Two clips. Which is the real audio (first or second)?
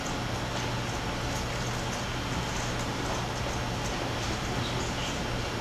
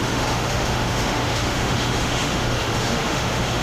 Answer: first